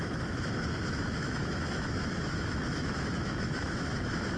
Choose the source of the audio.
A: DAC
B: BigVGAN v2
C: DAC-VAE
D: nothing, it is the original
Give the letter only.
C